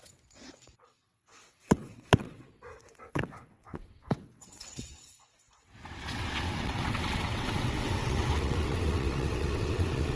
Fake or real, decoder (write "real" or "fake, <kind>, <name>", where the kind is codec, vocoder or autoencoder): fake, vocoder, WaveNeXt